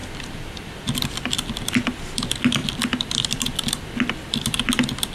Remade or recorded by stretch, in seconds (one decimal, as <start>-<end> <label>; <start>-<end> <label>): 0.0-1.0 remade; 1.0-2.6 recorded; 2.6-3.8 remade; 3.8-5.1 recorded